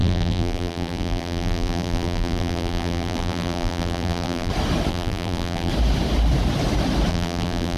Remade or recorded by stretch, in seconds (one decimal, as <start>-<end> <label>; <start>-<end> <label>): 0.0-4.5 remade; 4.5-4.9 recorded; 4.9-5.7 remade; 5.7-7.1 recorded; 7.1-7.8 remade